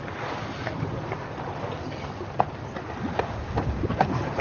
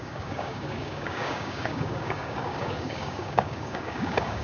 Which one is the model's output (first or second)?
second